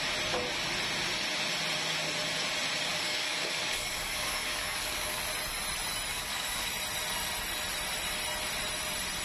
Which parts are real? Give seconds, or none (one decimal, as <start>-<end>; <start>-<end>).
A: 0.0-2.9; 5.2-6.1; 6.7-9.2